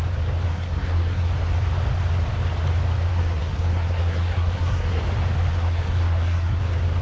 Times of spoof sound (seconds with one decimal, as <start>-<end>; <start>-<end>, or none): 0.5-1.3; 3.1-5.0; 5.5-6.6

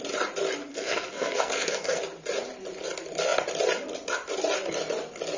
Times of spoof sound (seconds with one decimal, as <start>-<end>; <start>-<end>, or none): 0.7-2.0

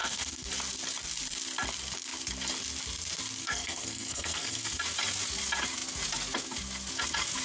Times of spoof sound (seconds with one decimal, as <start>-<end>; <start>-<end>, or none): 0.0-0.5; 3.4-4.8

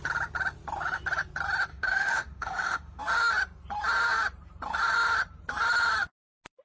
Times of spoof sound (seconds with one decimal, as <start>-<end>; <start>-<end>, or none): 1.7-3.0

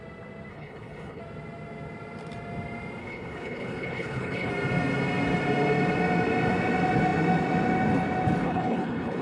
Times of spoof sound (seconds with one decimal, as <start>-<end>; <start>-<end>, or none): 0.5-1.2; 3.0-4.5; 8.4-9.2